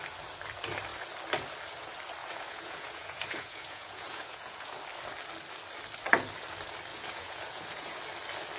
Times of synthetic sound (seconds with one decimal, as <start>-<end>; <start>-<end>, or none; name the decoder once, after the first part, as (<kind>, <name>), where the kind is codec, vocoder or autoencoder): 2.2-4.8 (vocoder, Vocos); 6.9-8.0